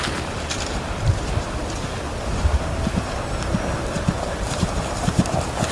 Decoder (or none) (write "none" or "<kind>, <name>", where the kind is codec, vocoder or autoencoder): none